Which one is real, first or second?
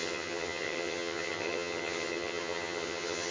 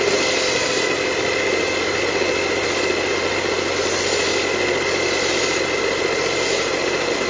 second